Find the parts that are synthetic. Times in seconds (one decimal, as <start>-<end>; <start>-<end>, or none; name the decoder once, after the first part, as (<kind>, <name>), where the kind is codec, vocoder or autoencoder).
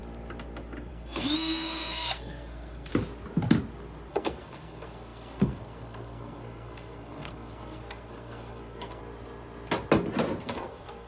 0.9-2.9 (codec, SNAC); 4.1-9.0; 10.4-11.1